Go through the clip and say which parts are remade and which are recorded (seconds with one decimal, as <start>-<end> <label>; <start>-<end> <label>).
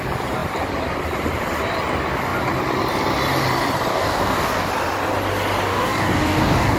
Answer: 0.0-3.9 recorded; 3.9-4.7 remade; 4.7-5.7 recorded; 5.7-6.8 remade